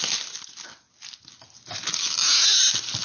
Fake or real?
real